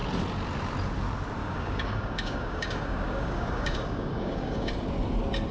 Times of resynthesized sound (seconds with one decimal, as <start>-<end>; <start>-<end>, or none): 1.4-4.7

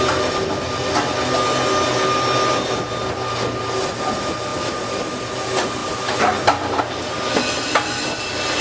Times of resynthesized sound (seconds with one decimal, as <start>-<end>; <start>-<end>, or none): none

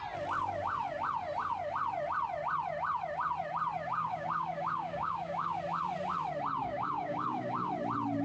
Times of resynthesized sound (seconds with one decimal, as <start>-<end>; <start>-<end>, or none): 4.0-5.6; 6.6-7.7

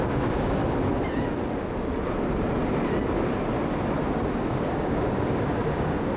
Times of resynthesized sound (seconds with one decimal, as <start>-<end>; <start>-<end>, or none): 0.0-0.6; 4.3-6.2

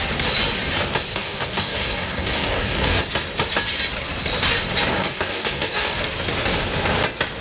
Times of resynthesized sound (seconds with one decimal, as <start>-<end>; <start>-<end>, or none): 1.1-3.0; 4.9-6.0

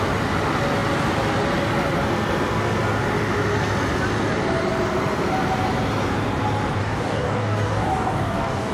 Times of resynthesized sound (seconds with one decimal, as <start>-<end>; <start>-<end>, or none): 6.8-8.7

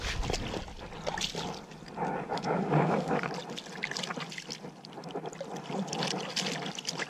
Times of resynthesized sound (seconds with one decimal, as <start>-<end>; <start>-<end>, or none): 2.3-3.3